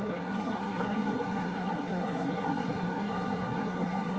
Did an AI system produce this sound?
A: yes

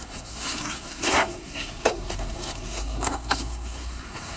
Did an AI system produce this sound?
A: yes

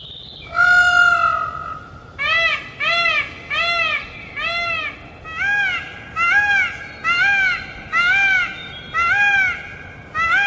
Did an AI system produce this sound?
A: no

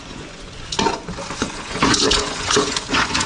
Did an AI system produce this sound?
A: yes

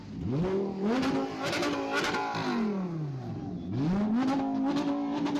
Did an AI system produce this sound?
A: no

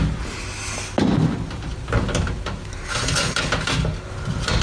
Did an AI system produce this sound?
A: no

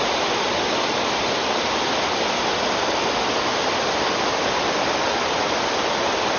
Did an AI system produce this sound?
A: no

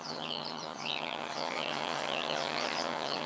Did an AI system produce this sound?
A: yes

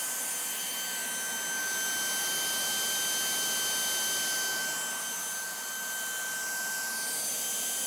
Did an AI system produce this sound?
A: no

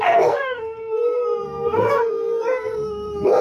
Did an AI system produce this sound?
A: yes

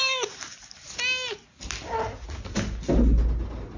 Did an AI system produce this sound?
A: no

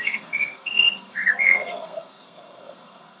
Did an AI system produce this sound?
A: yes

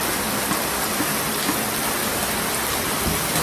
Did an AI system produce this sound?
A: no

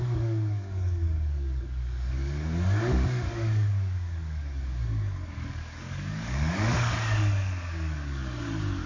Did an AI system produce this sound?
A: yes